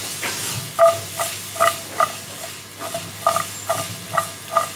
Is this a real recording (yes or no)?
yes